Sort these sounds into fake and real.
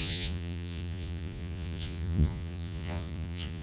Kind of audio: fake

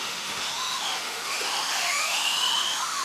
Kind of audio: fake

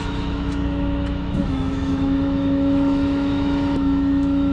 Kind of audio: fake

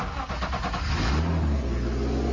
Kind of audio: real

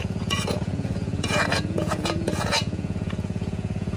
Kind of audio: fake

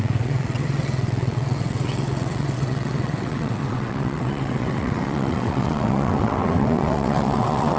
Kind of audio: fake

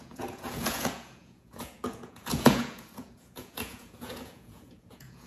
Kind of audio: fake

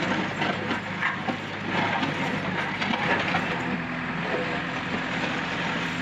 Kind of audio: real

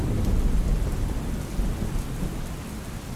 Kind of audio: real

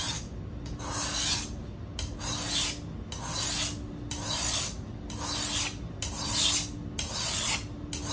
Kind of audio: real